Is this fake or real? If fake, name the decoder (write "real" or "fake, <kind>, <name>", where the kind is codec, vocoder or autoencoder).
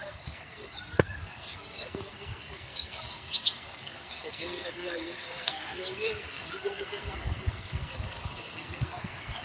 fake, codec, SNAC